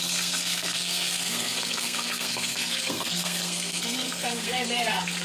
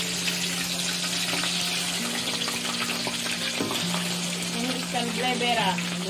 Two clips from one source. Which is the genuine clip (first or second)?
second